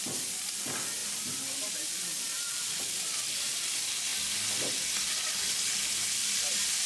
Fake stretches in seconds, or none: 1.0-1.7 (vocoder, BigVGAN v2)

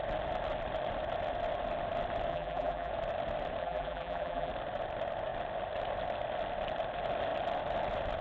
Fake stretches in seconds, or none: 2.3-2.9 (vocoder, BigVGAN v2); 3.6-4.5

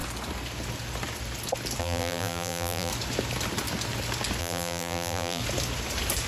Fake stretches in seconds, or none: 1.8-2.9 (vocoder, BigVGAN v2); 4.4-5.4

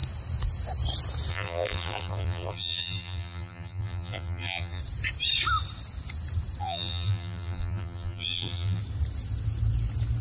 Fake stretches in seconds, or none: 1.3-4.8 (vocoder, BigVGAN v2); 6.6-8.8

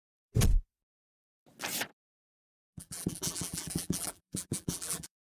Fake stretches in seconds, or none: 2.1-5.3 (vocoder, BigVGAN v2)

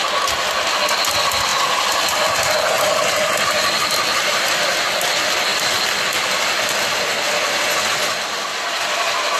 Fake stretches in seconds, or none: none

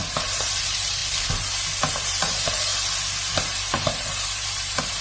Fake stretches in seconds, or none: 0.0-1.0 (vocoder, BigVGAN v2); 1.9-2.7; 3.3-5.0